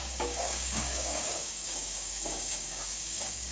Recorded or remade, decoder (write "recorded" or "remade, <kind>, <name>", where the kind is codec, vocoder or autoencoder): remade, codec, DAC